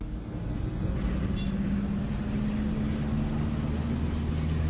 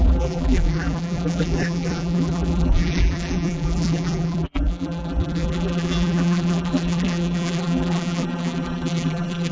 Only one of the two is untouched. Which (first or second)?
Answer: first